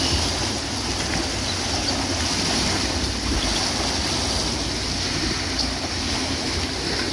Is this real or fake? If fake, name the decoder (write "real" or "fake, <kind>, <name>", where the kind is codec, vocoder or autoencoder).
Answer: real